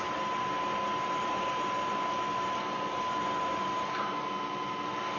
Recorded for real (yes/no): yes